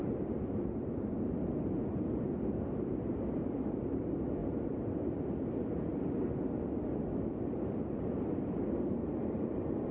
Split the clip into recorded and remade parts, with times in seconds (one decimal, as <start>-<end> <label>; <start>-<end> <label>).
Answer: 0.0-9.9 recorded